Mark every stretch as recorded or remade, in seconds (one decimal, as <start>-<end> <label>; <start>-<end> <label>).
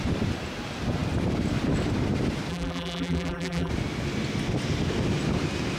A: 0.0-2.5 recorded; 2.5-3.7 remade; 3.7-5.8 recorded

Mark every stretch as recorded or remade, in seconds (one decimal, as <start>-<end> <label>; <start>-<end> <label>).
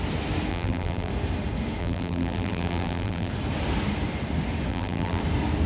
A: 0.0-0.5 recorded; 0.5-1.1 remade; 1.1-1.8 recorded; 1.8-3.3 remade; 3.3-4.7 recorded; 4.7-5.2 remade; 5.2-5.7 recorded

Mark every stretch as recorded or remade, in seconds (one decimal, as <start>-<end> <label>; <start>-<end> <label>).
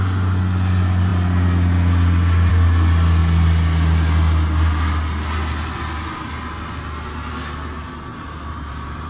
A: 0.0-8.1 recorded; 8.1-9.1 remade